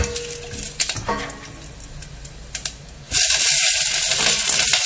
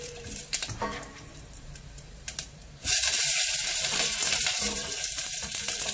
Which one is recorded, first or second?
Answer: first